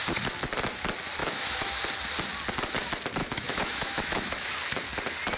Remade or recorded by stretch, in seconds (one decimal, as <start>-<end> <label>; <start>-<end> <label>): 0.0-1.2 recorded; 1.2-1.8 remade; 1.8-3.2 recorded; 3.2-4.5 remade; 4.5-5.4 recorded